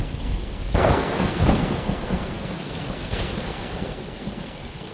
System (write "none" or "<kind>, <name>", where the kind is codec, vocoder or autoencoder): codec, SNAC